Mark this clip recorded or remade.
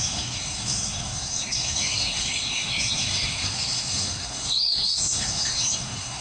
remade